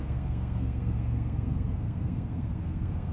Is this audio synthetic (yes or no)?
yes